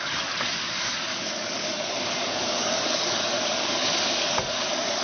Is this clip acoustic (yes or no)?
no